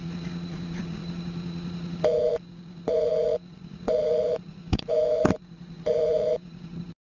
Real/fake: fake